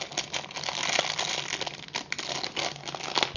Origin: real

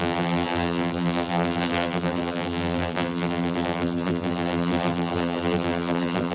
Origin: fake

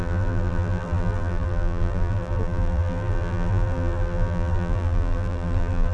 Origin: fake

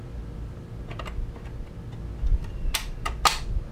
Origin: real